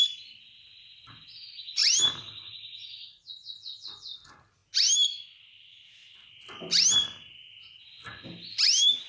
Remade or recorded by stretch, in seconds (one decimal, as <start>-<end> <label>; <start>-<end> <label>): 0.0-1.8 remade; 1.8-2.5 recorded; 2.5-4.6 remade; 4.6-9.1 recorded

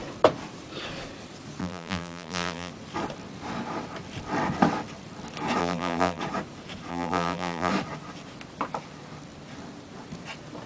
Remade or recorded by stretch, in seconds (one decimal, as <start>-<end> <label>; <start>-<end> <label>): 0.0-1.6 recorded; 1.6-2.7 remade; 2.7-5.6 recorded; 5.6-6.2 remade; 6.2-6.9 recorded; 6.9-7.7 remade; 7.7-10.7 recorded

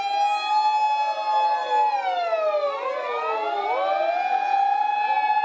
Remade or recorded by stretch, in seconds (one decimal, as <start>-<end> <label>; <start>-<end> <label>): 0.0-5.4 recorded

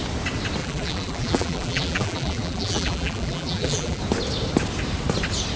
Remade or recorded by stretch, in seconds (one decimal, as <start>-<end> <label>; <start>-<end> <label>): 0.0-0.6 recorded; 0.6-4.0 remade; 4.0-5.6 recorded